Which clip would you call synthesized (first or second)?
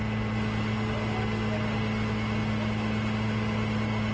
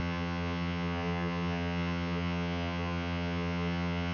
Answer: second